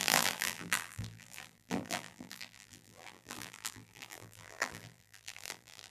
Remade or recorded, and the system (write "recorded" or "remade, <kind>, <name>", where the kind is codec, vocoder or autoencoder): remade, vocoder, BigVGAN v2